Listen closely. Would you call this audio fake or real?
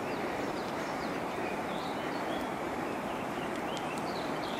fake